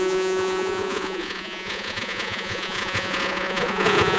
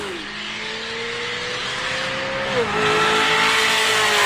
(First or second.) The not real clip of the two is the first